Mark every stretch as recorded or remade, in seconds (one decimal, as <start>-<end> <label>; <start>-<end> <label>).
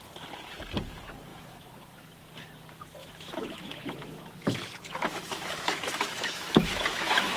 0.0-1.3 recorded; 1.3-2.3 remade; 2.3-3.0 recorded; 3.0-7.4 remade